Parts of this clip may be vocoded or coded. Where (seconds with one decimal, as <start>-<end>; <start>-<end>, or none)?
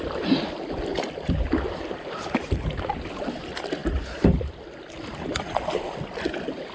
0.9-2.8